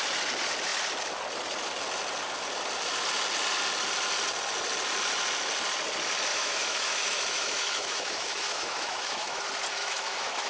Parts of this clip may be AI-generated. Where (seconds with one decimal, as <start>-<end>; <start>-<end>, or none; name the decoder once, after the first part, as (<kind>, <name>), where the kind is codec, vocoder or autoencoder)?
6.3-9.4 (autoencoder, DAC-VAE); 9.8-10.5